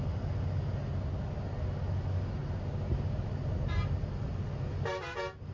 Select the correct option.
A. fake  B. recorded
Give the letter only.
B